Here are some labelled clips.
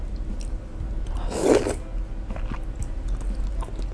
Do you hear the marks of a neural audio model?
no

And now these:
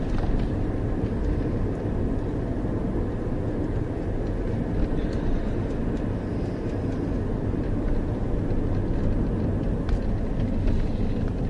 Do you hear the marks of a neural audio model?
no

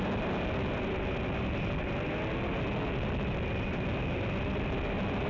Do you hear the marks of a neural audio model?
no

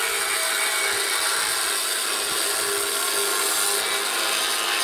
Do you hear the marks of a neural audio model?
no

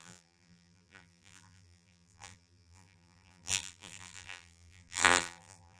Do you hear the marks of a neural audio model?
yes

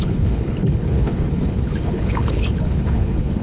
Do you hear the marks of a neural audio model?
yes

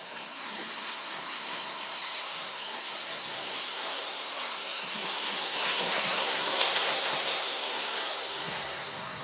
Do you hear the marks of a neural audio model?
yes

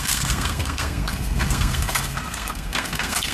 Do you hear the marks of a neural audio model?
yes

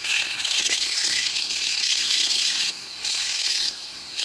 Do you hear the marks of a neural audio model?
yes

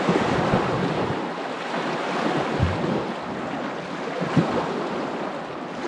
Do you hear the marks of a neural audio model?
no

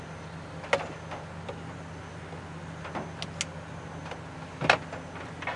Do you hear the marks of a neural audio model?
no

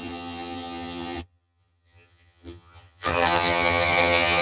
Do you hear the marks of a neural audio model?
yes